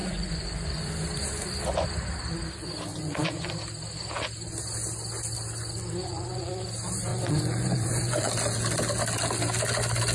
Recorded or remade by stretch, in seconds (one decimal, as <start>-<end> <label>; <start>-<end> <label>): 0.0-0.9 remade; 0.9-2.9 recorded; 2.9-3.5 remade; 3.5-6.0 recorded; 6.0-6.5 remade; 6.5-7.1 recorded; 7.1-8.3 remade; 8.3-10.1 recorded